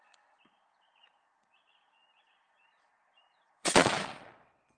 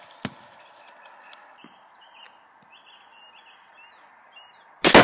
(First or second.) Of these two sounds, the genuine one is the second